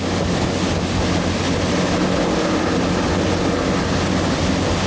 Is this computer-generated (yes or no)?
no